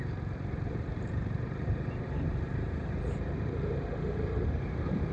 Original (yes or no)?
no